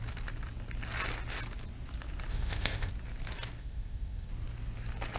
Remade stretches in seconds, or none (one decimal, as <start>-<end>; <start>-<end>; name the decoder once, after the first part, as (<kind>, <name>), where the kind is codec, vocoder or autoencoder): 2.3-2.9 (codec, ZipCodec); 3.6-4.3